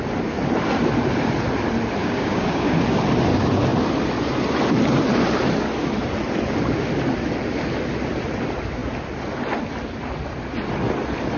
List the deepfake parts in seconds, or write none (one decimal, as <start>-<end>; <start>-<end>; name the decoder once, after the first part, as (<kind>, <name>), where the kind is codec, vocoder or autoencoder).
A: 2.0-2.8 (codec, DAC)